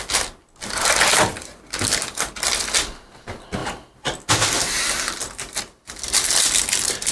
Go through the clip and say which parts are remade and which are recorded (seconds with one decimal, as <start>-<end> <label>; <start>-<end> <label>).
0.0-1.3 recorded; 1.3-3.1 remade; 3.1-7.1 recorded